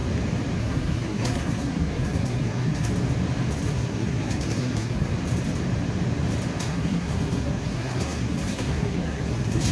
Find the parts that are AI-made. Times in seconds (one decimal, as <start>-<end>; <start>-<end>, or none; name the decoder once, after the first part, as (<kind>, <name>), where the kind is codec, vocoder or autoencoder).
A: 0.6-2.9 (codec, SNAC); 3.7-5.1; 6.6-9.7